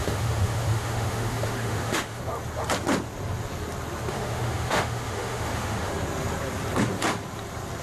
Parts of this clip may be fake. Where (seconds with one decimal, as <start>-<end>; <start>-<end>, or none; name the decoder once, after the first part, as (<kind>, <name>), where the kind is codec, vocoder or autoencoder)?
0.0-2.2 (autoencoder, DAC-VAE); 4.1-5.9